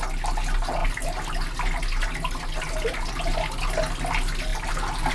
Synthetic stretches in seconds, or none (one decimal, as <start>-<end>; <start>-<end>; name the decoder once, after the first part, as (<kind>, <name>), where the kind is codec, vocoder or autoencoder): none